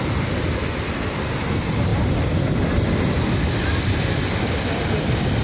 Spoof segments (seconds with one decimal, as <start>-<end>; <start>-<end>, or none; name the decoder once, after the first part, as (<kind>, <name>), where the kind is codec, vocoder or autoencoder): none